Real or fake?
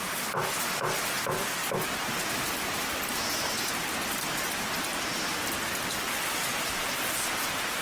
real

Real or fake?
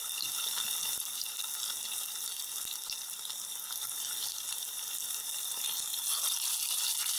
real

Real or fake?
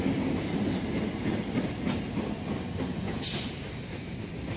real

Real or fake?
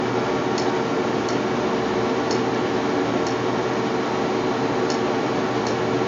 real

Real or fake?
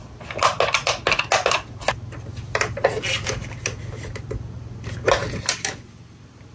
real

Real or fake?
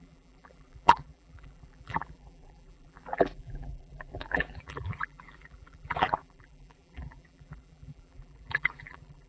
fake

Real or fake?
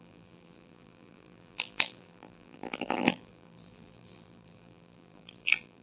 fake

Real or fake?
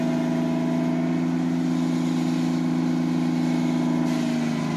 real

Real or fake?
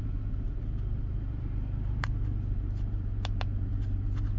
fake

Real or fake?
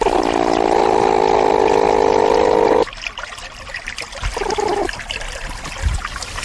real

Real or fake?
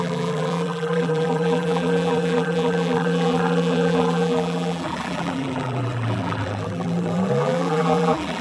fake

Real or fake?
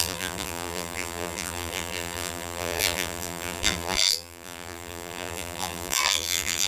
fake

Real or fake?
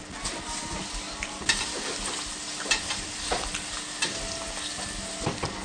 real